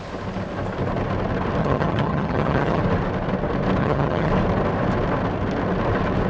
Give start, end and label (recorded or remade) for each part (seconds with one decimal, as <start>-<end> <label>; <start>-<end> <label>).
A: 0.0-1.6 recorded; 1.6-2.8 remade; 2.8-3.8 recorded; 3.8-4.3 remade; 4.3-6.3 recorded